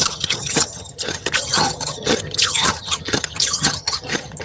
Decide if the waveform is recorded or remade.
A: remade